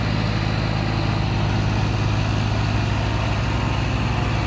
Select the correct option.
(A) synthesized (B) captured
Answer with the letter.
B